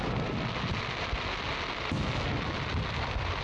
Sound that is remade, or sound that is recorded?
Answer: recorded